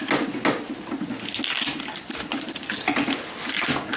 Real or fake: real